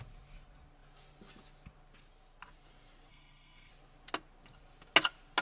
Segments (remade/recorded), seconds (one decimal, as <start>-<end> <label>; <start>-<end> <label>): 0.0-3.1 recorded; 3.1-3.7 remade; 3.7-5.4 recorded